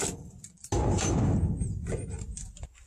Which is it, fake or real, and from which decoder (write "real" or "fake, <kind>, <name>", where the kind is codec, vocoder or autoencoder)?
real